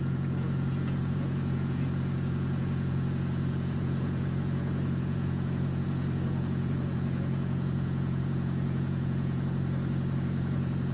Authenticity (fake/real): fake